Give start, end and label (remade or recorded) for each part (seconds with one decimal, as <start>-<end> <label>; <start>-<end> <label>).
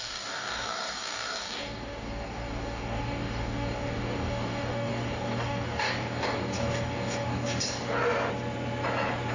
0.0-8.0 remade; 8.0-9.3 recorded